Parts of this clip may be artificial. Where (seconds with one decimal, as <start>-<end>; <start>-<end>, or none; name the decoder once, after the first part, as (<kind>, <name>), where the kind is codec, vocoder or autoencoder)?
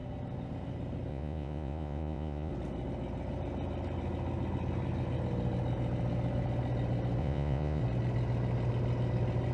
1.1-2.5 (vocoder, Vocos); 7.2-7.8